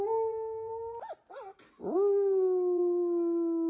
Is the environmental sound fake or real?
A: real